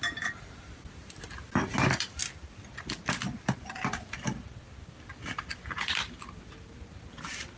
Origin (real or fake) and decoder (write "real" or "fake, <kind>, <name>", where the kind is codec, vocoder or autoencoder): real